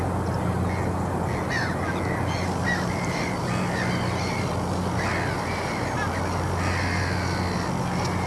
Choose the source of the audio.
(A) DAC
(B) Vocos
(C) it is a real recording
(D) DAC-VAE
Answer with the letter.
C